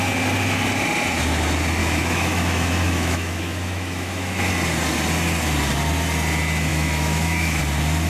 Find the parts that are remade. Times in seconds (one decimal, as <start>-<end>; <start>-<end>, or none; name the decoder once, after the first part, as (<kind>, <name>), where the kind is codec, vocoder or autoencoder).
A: 1.8-4.5 (autoencoder, DAC-VAE); 6.7-7.6